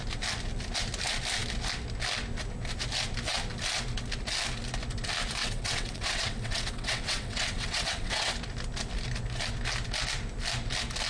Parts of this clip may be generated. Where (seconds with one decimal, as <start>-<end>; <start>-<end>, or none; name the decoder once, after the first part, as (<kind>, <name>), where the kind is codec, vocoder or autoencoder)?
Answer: 5.4-8.3 (vocoder, WaveNeXt)